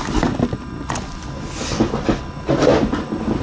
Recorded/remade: recorded